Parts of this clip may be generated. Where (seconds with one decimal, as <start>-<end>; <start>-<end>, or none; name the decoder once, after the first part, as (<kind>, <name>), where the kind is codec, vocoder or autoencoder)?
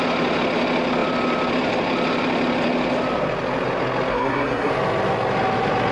4.1-4.7 (codec, SNAC)